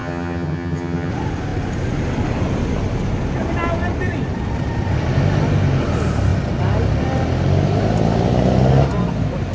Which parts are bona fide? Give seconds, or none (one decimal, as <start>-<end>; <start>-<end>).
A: 1.1-9.5